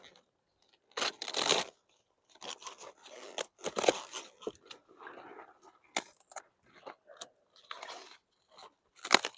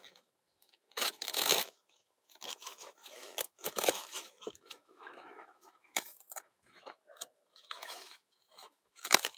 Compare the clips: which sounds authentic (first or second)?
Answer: first